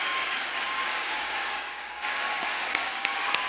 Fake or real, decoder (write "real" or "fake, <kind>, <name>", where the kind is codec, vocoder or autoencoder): fake, codec, DAC